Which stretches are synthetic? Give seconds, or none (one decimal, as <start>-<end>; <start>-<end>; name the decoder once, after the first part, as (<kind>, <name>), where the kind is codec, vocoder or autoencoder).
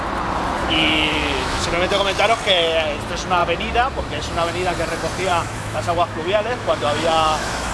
0.6-1.7 (autoencoder, DAC-VAE); 5.3-7.7